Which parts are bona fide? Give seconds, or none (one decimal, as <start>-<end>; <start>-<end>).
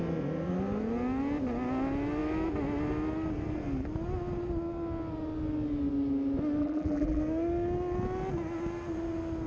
0.0-6.6; 7.2-9.5